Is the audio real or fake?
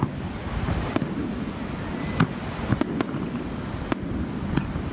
real